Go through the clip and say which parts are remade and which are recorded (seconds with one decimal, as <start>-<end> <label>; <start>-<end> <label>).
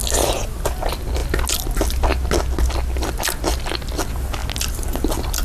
0.0-5.4 recorded